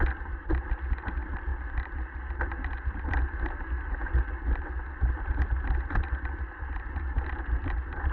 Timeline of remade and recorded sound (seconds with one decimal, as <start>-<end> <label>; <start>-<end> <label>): 0.0-8.1 recorded